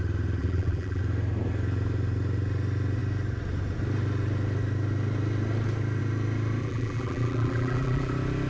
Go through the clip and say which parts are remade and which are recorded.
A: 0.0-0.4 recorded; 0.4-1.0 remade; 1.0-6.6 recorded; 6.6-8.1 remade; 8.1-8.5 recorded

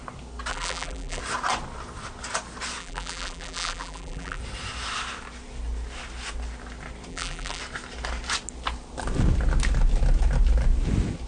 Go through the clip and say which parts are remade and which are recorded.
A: 0.0-0.5 recorded; 0.5-1.2 remade; 1.2-2.8 recorded; 2.8-4.4 remade; 4.4-7.1 recorded; 7.1-7.6 remade; 7.6-11.3 recorded

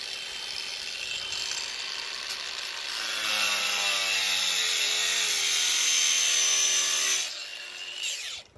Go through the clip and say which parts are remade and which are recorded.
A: 0.0-8.6 recorded

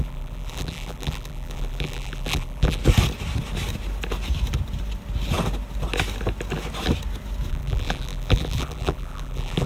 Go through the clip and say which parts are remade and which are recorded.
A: 0.0-2.8 remade; 2.8-7.5 recorded; 7.5-9.7 remade

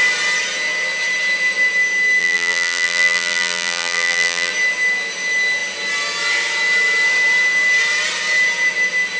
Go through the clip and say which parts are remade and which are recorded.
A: 0.0-2.2 recorded; 2.2-4.5 remade; 4.5-9.2 recorded